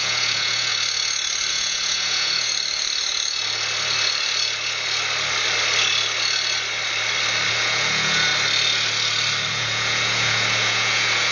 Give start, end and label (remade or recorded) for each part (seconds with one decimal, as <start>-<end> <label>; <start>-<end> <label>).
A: 0.0-0.7 remade; 0.7-1.5 recorded; 1.5-2.5 remade; 2.5-7.5 recorded; 7.5-8.3 remade; 8.3-9.5 recorded; 9.5-11.3 remade